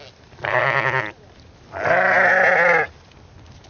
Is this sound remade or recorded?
recorded